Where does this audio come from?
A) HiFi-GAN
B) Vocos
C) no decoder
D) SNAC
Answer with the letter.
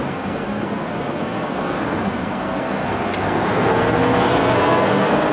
D